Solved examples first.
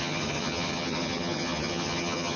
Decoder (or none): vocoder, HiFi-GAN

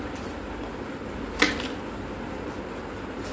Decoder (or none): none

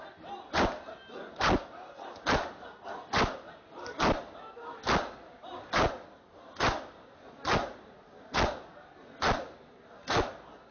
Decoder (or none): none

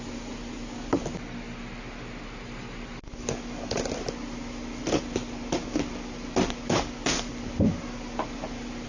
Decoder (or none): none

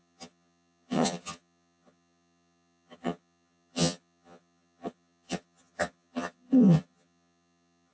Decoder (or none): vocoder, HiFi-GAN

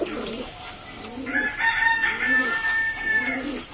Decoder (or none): none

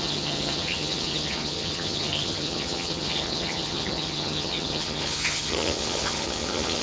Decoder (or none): vocoder, HiFi-GAN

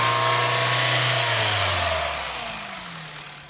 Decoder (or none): none